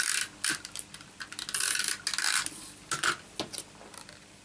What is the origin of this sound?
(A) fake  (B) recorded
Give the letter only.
B